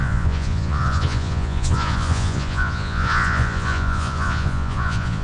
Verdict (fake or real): fake